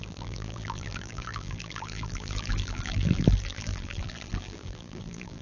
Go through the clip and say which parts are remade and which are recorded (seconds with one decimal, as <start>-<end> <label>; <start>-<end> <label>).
0.0-5.4 remade